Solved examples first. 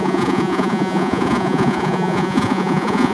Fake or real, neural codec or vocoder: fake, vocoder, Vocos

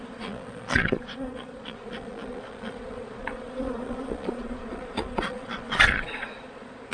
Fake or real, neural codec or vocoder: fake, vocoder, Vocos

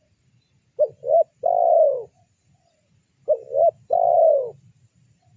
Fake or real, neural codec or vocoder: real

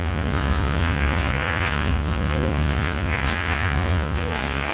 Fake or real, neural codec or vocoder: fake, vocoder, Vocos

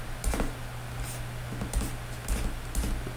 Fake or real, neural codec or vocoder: real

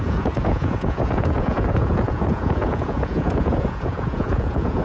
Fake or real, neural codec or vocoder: fake, vocoder, Vocos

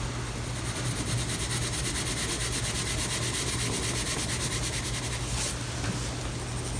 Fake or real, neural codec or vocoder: real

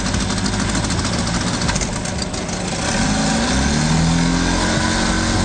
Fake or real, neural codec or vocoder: real